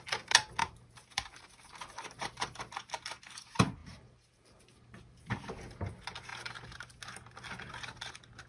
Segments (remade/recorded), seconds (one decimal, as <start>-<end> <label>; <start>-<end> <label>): 0.0-0.6 recorded; 0.6-2.6 remade; 2.6-3.8 recorded; 3.8-5.5 remade; 5.5-8.5 recorded